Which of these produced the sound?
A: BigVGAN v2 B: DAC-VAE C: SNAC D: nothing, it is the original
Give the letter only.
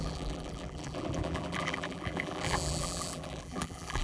A